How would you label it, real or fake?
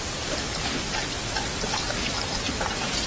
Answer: real